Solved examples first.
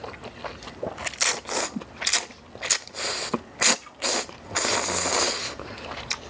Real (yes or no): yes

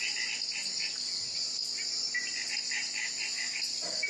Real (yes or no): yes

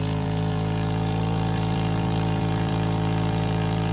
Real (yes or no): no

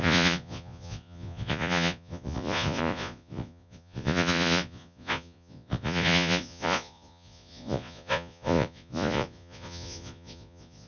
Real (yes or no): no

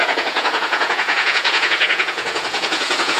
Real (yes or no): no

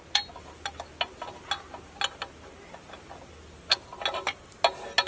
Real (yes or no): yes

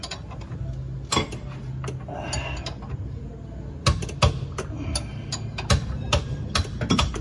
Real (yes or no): yes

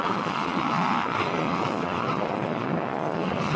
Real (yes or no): no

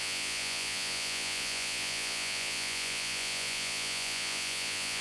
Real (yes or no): no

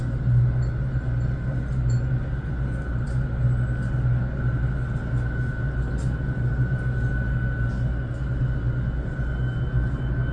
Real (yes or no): yes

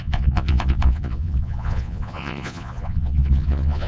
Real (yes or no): no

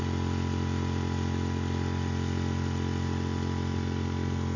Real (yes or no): yes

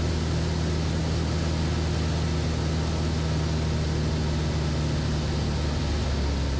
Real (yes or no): yes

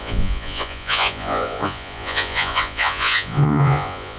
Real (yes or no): no